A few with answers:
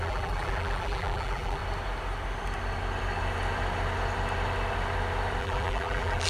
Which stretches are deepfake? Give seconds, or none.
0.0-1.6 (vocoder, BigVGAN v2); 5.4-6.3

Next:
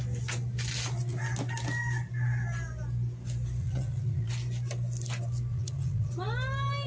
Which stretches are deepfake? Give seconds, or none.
3.6-4.3 (vocoder, Vocos); 5.5-6.1

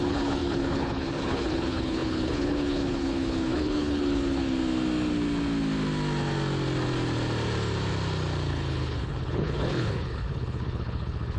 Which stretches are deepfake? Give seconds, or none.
0.0-4.6 (codec, HILCodec); 8.5-11.4

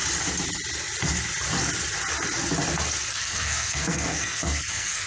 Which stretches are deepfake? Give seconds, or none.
3.1-5.1 (codec, SNAC)